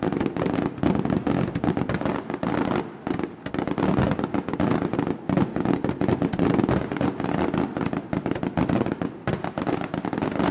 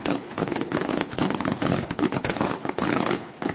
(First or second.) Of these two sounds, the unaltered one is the first